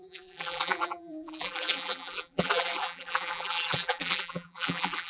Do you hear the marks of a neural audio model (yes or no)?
yes